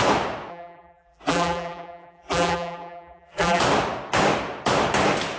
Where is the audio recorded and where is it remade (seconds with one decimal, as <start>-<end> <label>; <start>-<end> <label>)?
0.0-0.5 recorded; 0.5-3.6 remade; 3.6-5.4 recorded